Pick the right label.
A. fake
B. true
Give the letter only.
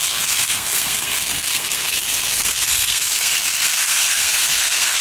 A